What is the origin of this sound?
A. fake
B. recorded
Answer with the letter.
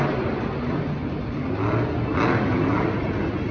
B